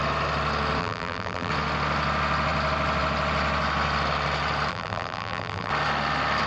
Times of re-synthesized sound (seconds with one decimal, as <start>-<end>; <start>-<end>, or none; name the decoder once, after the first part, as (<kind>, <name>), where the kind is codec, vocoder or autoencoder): 0.8-1.5 (vocoder, BigVGAN v2); 4.7-5.7